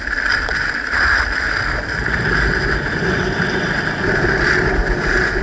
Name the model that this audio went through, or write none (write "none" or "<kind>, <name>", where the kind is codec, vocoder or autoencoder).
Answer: none